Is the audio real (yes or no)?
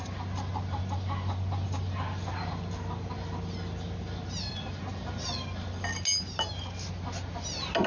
yes